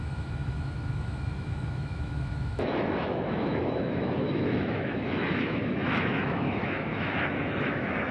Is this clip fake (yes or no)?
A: yes